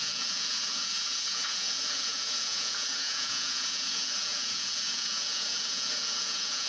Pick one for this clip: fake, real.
fake